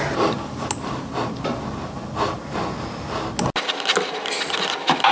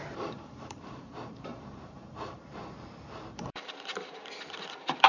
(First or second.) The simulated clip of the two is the second